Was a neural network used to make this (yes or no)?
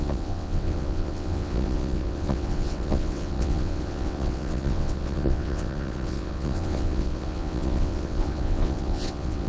yes